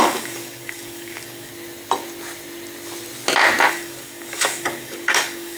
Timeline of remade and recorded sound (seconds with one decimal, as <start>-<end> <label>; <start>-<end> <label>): 0.0-1.5 remade; 1.5-3.7 recorded; 3.7-5.6 remade